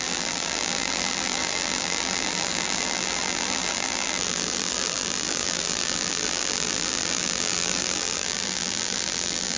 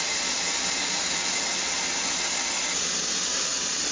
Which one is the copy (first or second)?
first